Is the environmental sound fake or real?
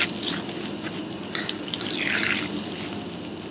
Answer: real